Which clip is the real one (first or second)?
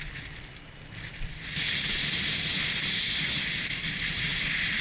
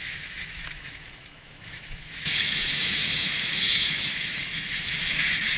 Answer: first